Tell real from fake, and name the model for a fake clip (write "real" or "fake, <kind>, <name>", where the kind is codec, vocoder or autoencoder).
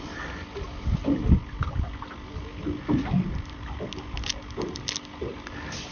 real